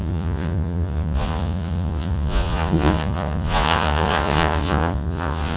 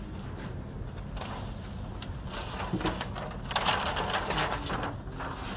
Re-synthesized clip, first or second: first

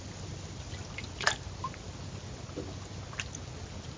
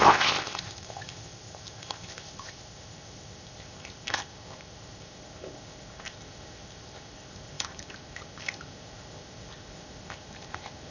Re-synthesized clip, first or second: second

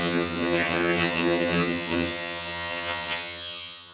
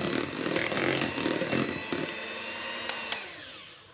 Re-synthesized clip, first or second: first